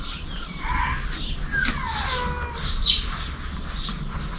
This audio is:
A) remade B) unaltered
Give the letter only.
B